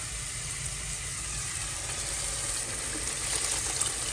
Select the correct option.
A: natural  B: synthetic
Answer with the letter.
A